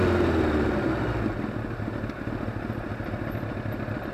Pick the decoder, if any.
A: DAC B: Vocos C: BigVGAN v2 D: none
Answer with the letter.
D